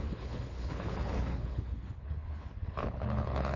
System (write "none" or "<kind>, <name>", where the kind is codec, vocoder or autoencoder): codec, HILCodec